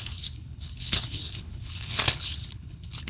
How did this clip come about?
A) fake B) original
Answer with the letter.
A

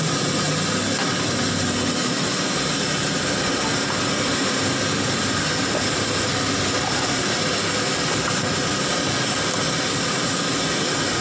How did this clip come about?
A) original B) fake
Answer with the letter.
A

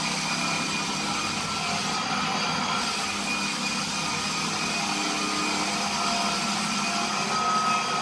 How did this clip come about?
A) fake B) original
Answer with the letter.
B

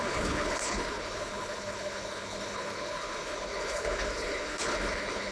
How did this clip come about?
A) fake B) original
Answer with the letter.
A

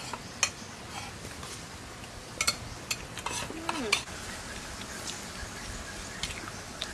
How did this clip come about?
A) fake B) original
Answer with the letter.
B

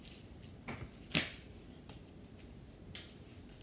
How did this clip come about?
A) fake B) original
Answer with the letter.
B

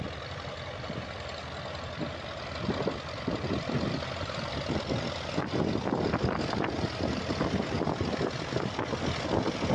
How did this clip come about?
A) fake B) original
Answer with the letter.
B